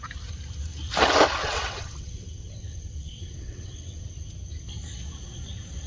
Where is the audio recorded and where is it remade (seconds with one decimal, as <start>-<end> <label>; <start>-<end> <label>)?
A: 0.0-1.4 recorded; 1.4-4.0 remade; 4.0-5.9 recorded